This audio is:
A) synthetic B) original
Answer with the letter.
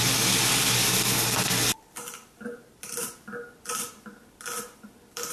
B